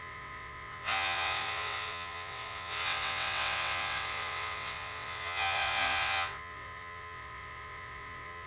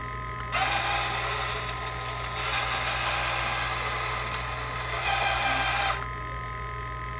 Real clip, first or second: second